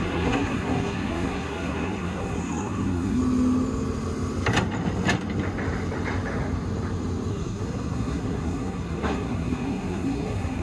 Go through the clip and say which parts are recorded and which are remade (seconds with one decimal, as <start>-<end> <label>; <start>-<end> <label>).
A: 0.0-3.2 remade; 3.2-7.3 recorded; 7.3-10.6 remade